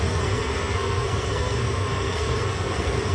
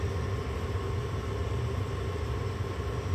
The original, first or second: second